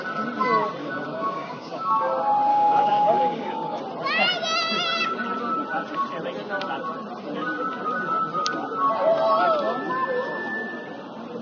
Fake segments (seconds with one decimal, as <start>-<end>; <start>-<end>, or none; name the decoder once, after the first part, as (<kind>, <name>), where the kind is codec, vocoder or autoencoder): 0.8-2.1 (codec, DAC); 2.5-3.8